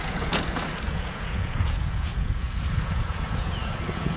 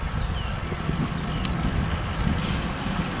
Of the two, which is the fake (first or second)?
first